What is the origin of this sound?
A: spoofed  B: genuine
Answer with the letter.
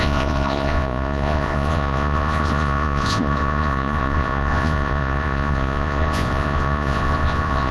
A